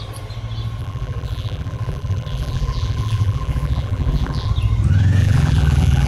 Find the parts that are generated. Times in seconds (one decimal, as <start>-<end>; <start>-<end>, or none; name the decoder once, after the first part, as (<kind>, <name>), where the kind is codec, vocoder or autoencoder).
0.8-4.5 (vocoder, BigVGAN v2); 5.2-6.1